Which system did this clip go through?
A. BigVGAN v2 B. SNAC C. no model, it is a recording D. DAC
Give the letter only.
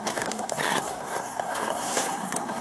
B